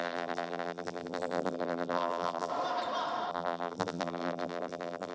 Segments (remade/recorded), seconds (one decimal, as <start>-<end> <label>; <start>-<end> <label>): 0.0-2.5 remade; 2.5-3.3 recorded; 3.3-5.1 remade